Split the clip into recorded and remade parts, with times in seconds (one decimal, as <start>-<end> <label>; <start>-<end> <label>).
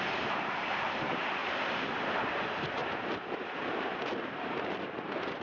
0.0-1.4 remade; 1.4-2.3 recorded; 2.3-5.4 remade